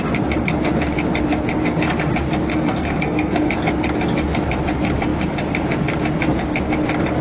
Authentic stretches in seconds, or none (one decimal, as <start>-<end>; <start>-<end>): 0.0-2.5; 3.5-7.2